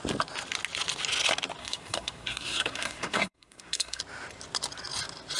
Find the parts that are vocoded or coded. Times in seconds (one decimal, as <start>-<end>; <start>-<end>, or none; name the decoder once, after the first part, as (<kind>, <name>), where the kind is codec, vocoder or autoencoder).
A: 1.6-4.0 (codec, SNAC)